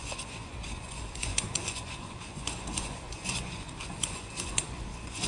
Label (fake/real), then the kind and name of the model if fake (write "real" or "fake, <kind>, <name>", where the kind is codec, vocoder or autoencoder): fake, vocoder, Vocos